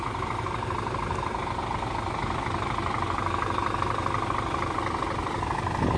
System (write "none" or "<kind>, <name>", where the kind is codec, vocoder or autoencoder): none